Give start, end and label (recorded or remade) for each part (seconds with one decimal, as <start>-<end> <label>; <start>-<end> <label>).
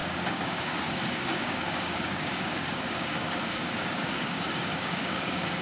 0.0-5.6 remade